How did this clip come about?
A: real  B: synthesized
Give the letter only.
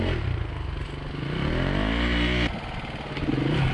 A